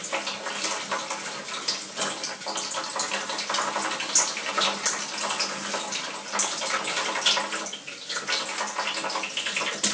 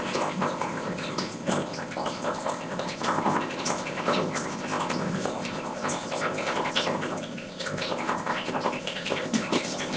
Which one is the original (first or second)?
first